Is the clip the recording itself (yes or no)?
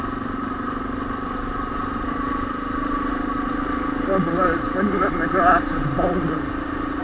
no